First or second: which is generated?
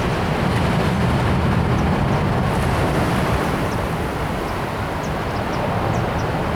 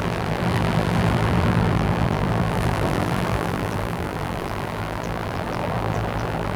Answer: second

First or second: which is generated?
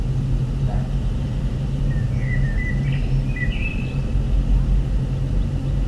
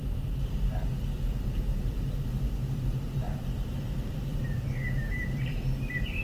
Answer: second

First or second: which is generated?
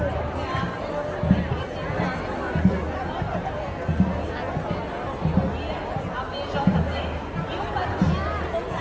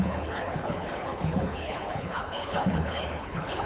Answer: second